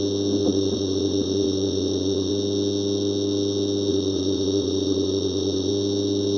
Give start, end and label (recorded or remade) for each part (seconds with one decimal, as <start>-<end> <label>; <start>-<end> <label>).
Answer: 0.0-0.4 recorded; 0.4-2.3 remade; 2.3-3.9 recorded; 3.9-5.7 remade; 5.7-6.4 recorded